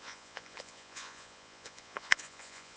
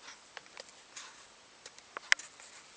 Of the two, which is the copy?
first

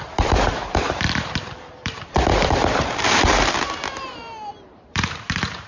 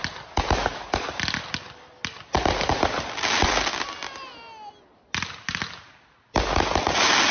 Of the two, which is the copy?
first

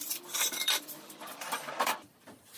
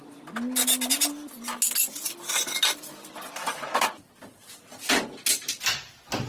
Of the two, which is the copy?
first